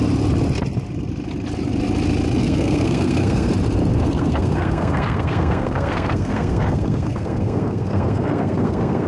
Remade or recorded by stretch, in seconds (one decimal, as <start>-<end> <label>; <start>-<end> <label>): 0.0-2.4 recorded; 2.4-3.5 remade; 3.5-3.9 recorded; 3.9-9.1 remade

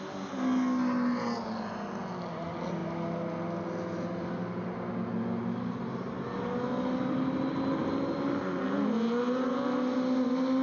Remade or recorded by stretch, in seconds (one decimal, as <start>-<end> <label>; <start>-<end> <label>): 0.0-10.6 recorded

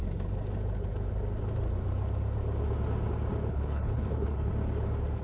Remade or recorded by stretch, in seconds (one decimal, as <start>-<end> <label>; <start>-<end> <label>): 0.0-3.5 recorded; 3.5-4.5 remade; 4.5-5.2 recorded

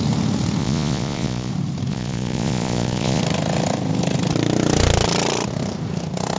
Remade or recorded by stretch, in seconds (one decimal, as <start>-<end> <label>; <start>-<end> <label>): 0.0-0.6 recorded; 0.6-1.5 remade; 1.5-1.9 recorded; 1.9-3.2 remade; 3.2-6.4 recorded